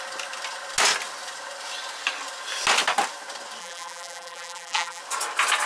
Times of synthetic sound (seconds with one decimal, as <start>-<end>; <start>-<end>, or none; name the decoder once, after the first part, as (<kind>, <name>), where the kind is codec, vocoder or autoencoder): 3.6-5.0 (vocoder, BigVGAN v2)